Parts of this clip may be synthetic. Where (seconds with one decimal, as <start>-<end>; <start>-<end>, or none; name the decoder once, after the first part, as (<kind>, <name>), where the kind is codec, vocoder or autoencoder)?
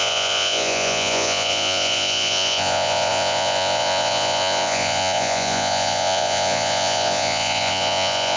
0.0-8.4 (vocoder, Vocos)